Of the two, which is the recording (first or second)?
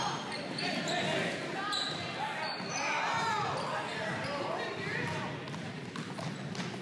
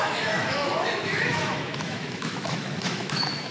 first